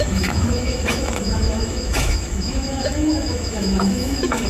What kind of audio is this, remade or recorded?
remade